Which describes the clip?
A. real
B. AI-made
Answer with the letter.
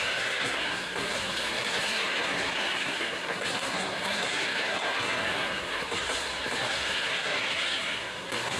B